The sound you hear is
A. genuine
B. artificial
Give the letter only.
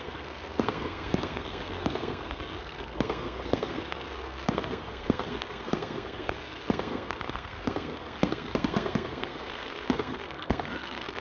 B